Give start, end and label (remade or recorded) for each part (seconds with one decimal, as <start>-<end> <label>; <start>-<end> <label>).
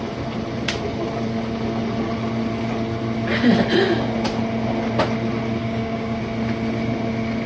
0.0-5.6 recorded; 5.6-6.2 remade; 6.2-7.5 recorded